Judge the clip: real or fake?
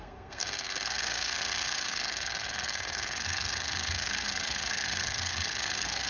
fake